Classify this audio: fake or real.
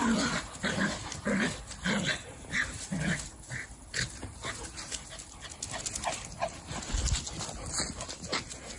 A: real